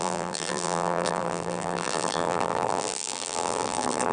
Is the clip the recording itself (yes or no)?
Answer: no